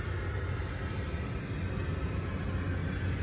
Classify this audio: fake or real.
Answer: real